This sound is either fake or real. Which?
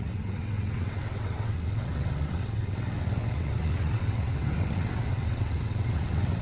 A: fake